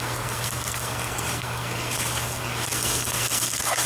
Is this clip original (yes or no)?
no